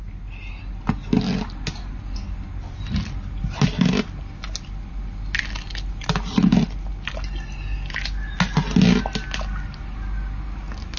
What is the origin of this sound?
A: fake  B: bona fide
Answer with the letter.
B